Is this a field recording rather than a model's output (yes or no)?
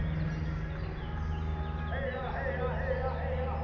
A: yes